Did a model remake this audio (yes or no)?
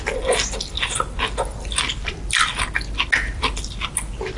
no